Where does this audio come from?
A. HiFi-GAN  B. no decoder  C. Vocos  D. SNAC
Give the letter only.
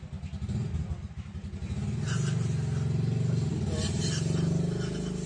B